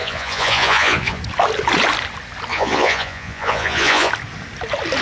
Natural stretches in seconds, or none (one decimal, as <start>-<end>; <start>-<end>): 1.2-2.5; 4.1-5.0